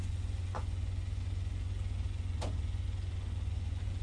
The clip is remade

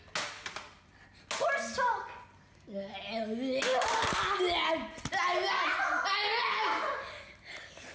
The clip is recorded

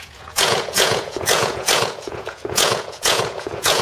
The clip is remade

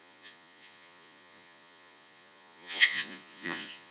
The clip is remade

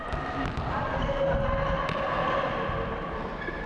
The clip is recorded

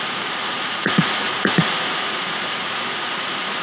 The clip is remade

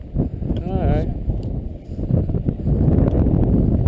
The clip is recorded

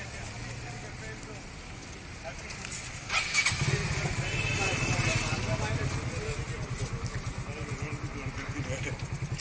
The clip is recorded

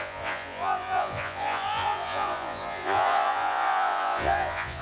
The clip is remade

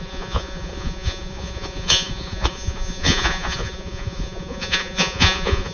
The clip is remade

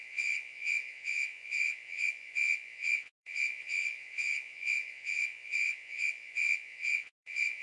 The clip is remade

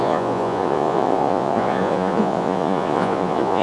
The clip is remade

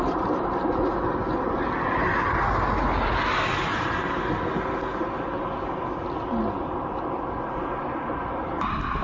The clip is recorded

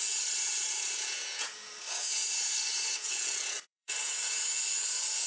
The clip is remade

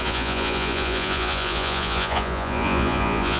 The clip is remade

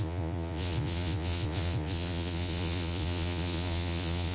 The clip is remade